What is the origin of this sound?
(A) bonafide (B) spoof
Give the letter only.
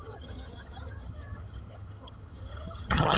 B